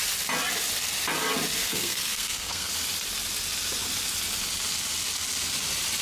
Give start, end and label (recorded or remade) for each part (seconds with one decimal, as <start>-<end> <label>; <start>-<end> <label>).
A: 0.0-1.6 recorded; 1.6-2.7 remade; 2.7-6.0 recorded